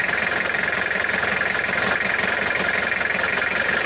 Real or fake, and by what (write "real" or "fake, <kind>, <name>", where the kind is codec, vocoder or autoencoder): real